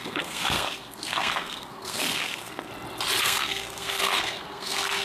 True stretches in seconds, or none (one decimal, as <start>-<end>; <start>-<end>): 2.7-3.2

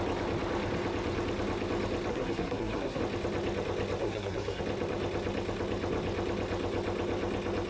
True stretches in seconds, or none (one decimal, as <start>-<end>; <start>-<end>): 0.0-2.1; 3.0-4.0; 4.6-7.7

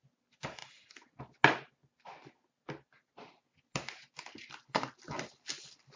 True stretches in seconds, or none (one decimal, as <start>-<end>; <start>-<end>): 0.0-6.0

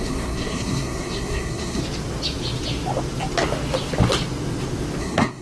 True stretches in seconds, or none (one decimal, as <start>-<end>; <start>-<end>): 1.8-5.0